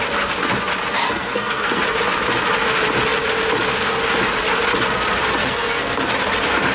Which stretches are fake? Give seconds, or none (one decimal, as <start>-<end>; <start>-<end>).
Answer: 1.0-1.8; 5.4-6.1